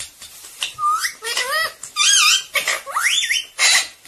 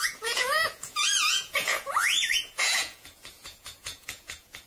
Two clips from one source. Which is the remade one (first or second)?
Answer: second